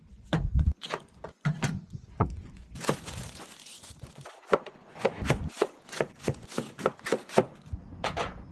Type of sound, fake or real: fake